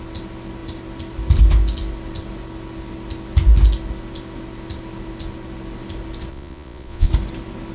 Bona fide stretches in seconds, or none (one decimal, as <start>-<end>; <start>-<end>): 0.0-6.3; 7.1-7.7